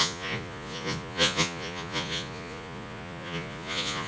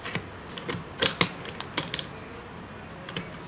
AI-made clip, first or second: first